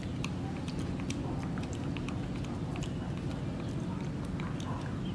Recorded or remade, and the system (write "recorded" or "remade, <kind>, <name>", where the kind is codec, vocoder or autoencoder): recorded